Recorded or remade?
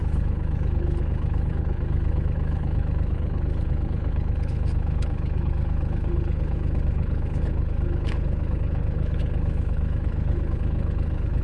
remade